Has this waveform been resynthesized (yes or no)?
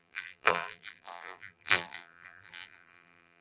yes